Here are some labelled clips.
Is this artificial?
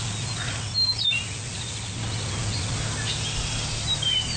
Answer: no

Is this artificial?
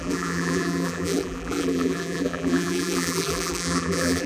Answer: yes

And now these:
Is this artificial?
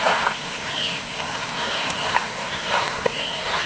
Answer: yes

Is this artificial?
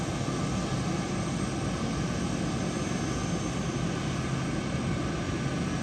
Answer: no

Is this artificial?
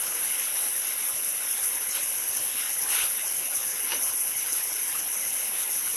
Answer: yes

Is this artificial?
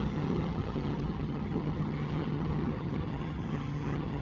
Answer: yes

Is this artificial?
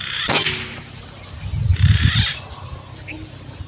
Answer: no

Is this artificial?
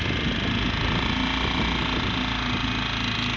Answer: no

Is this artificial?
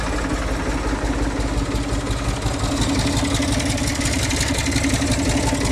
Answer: no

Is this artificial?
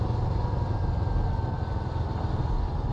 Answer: no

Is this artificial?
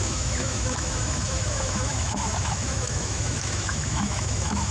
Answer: yes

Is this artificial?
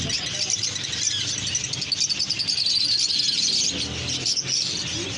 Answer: no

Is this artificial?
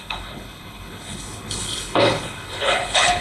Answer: yes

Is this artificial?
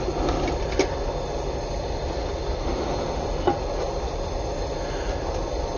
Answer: no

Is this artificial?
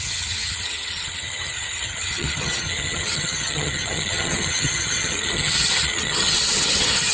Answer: yes